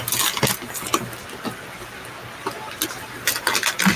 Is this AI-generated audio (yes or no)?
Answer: no